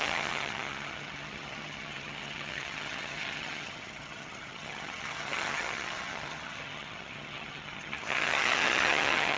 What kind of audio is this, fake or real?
fake